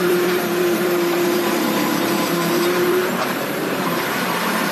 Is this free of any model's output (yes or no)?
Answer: no